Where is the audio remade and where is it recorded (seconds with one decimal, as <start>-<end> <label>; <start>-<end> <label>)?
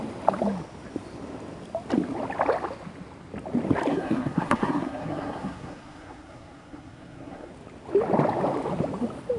0.0-3.9 recorded; 3.9-7.5 remade; 7.5-9.4 recorded